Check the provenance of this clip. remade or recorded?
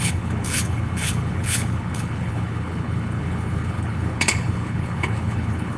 remade